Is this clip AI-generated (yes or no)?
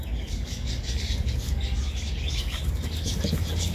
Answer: yes